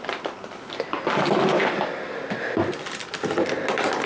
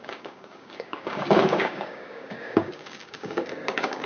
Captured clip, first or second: first